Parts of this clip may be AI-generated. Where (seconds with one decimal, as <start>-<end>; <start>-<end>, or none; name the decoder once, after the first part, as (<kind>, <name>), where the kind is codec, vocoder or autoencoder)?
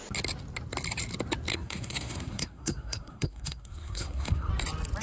1.5-4.5 (codec, SNAC)